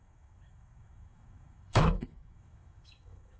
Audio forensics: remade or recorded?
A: remade